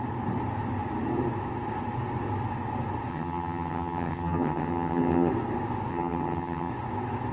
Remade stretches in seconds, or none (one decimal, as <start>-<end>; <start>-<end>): 3.1-5.3; 5.9-6.7